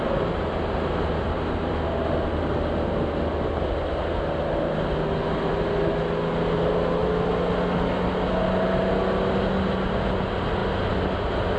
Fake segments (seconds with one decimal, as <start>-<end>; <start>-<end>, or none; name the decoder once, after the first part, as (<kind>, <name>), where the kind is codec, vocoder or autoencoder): none